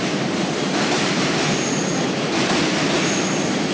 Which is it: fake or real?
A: real